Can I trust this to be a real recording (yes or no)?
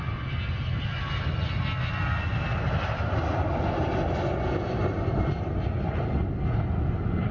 yes